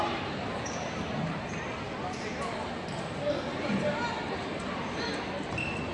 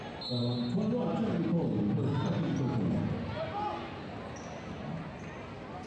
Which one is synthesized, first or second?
first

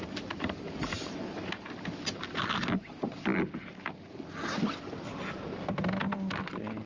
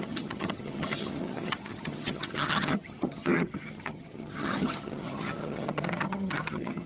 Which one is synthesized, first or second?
second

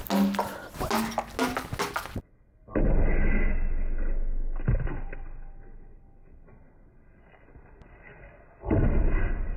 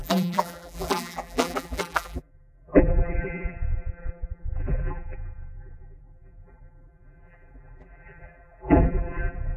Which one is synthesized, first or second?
second